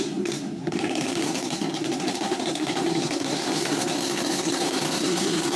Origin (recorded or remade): remade